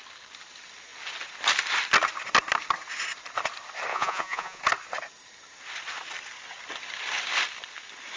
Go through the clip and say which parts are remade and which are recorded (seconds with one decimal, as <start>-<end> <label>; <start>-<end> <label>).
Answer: 0.0-3.9 recorded; 3.9-4.6 remade; 4.6-8.2 recorded